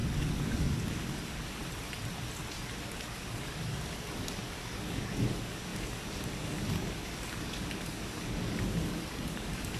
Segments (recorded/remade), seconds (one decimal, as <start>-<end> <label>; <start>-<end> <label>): 0.0-1.6 remade; 1.6-3.0 recorded; 3.0-9.8 remade